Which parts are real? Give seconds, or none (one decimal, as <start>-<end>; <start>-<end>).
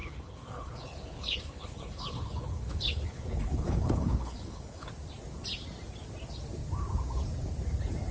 4.9-8.1